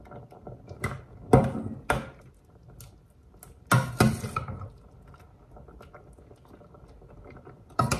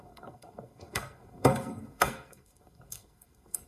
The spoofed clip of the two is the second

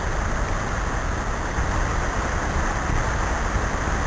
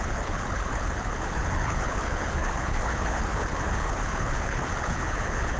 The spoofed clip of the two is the second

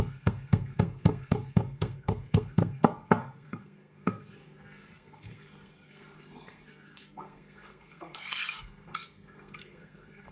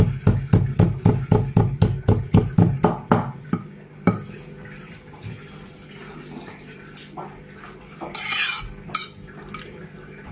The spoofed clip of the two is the first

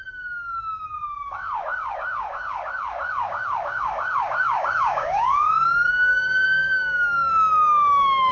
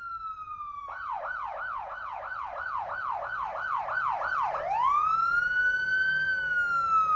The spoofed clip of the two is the first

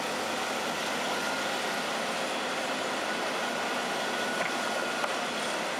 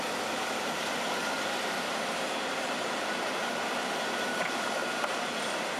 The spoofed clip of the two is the second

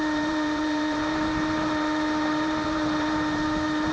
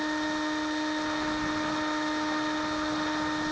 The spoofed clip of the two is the first